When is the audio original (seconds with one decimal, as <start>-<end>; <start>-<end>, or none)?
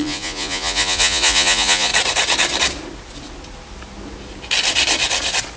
1.9-5.6